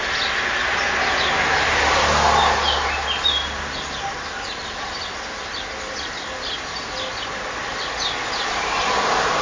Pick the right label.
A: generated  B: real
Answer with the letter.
B